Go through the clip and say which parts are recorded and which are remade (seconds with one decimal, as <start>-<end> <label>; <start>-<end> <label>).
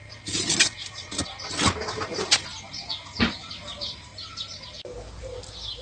0.0-5.8 recorded